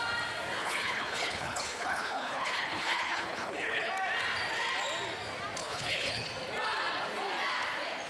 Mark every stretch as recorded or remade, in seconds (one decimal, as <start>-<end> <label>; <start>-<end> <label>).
0.0-0.6 recorded; 0.6-3.9 remade; 3.9-5.6 recorded; 5.6-6.3 remade; 6.3-8.1 recorded